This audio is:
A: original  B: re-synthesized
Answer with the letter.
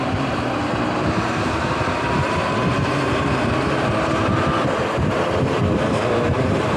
B